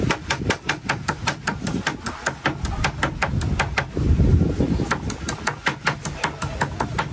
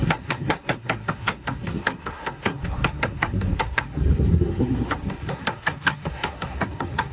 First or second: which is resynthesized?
second